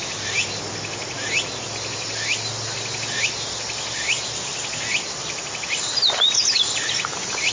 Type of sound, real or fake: real